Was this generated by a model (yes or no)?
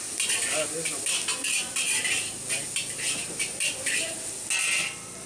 no